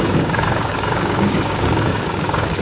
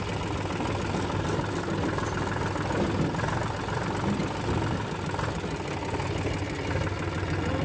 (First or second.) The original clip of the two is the second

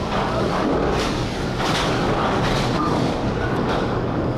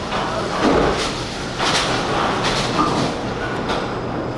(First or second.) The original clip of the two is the second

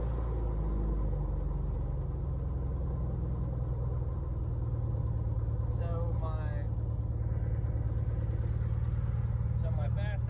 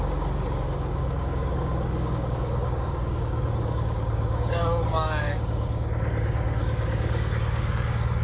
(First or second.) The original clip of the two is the first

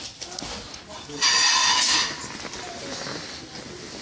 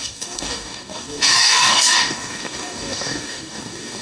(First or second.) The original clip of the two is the first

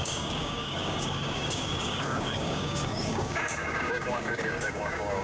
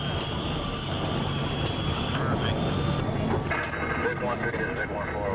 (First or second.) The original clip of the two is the second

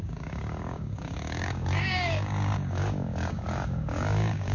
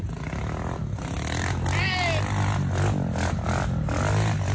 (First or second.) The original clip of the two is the second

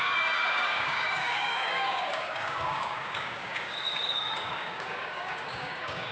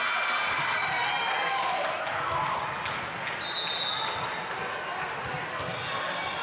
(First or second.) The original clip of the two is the second